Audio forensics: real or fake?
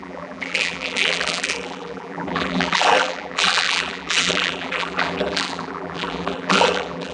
fake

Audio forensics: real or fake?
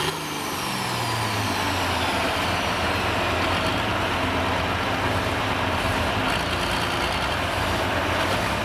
real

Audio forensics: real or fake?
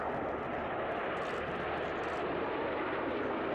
real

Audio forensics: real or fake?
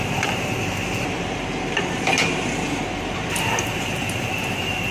fake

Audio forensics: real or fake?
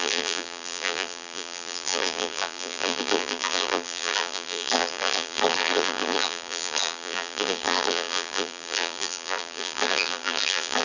fake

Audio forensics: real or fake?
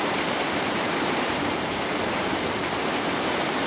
fake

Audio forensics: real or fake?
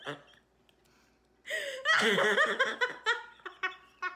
real